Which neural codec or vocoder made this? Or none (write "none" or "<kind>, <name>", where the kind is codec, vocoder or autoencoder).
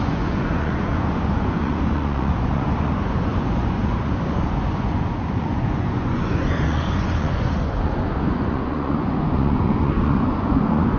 vocoder, Vocos